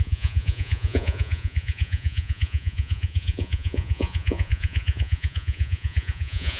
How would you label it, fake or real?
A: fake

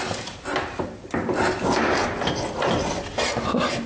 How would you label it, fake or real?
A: real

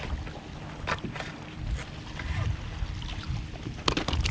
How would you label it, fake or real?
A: real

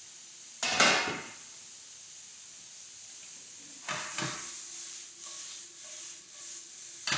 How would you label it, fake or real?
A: real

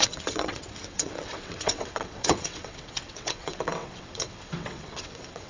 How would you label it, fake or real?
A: fake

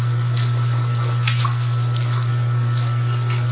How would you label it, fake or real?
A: fake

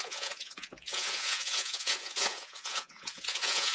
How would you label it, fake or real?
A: fake